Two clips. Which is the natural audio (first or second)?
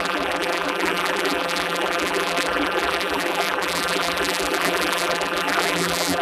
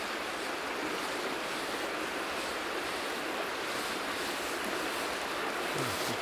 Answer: second